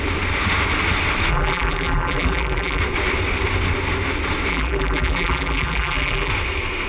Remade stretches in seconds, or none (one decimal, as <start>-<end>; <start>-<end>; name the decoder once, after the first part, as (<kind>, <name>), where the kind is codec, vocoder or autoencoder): 1.3-2.8 (vocoder, BigVGAN v2); 4.5-6.3